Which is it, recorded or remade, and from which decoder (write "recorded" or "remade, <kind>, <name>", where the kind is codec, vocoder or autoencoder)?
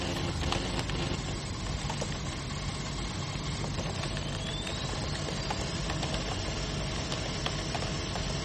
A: recorded